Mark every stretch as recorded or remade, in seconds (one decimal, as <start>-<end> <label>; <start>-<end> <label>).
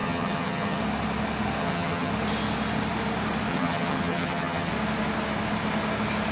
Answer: 0.0-0.8 remade; 0.8-1.6 recorded; 1.6-2.1 remade; 2.1-3.5 recorded; 3.5-4.7 remade; 4.7-6.3 recorded